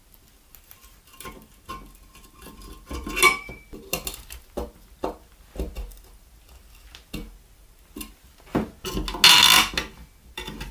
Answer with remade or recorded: recorded